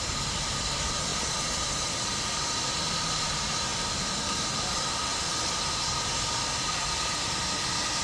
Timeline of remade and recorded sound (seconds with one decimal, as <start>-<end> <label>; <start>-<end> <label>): 0.0-3.7 remade; 3.7-4.4 recorded; 4.4-5.1 remade; 5.1-6.6 recorded; 6.6-8.0 remade